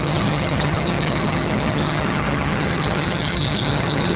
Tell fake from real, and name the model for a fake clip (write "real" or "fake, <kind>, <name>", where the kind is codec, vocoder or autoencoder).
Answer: fake, vocoder, HiFi-GAN